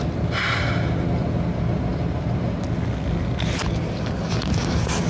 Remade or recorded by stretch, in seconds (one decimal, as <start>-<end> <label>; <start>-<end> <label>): 0.0-5.1 recorded